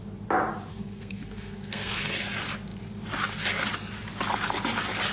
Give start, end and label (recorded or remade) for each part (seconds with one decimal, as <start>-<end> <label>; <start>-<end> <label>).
0.0-0.7 recorded; 0.7-2.1 remade; 2.1-5.1 recorded